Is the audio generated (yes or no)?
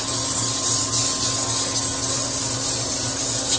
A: no